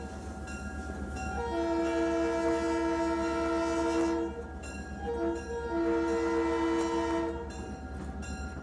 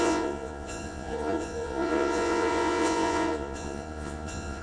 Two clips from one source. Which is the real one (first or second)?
first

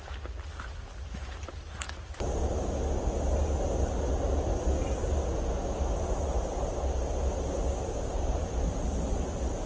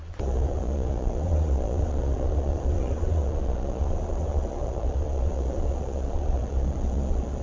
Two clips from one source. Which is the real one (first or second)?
first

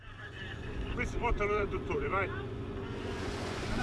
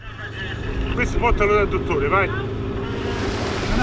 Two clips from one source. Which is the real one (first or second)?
second